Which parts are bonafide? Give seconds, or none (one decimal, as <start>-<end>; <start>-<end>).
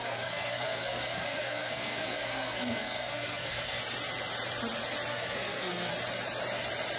3.8-5.1; 5.9-7.0